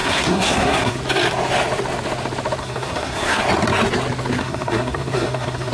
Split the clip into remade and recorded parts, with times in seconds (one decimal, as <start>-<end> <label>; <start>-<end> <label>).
0.0-1.0 remade; 1.0-2.6 recorded; 2.6-3.4 remade; 3.4-4.4 recorded; 4.4-5.7 remade

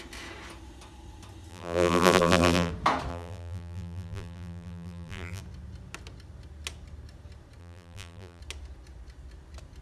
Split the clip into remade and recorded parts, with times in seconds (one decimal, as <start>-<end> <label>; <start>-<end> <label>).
0.0-1.5 recorded; 1.5-2.7 remade; 2.7-3.1 recorded; 3.1-5.4 remade; 5.4-7.6 recorded; 7.6-8.4 remade; 8.4-9.8 recorded

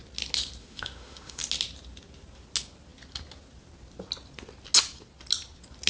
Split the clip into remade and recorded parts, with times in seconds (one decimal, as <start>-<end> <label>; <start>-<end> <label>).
0.0-0.6 recorded; 0.6-1.4 remade; 1.4-5.9 recorded

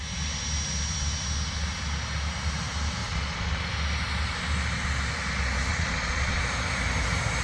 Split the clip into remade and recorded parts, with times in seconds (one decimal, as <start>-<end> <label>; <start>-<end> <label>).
0.0-3.0 recorded; 3.0-3.6 remade; 3.6-5.7 recorded; 5.7-6.4 remade; 6.4-7.4 recorded

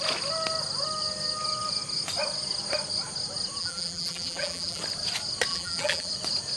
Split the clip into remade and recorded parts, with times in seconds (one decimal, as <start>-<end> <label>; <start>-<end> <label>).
0.0-3.6 recorded; 3.6-4.8 remade; 4.8-5.5 recorded; 5.5-6.1 remade; 6.1-6.6 recorded